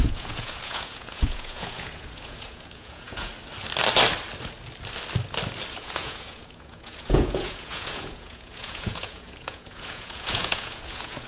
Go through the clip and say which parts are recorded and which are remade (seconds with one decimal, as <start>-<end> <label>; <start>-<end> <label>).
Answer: 0.0-3.3 remade; 3.3-5.7 recorded; 5.7-11.3 remade